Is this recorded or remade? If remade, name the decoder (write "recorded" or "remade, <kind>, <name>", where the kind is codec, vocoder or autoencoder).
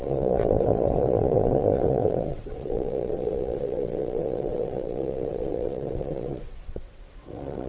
remade, vocoder, WaveNeXt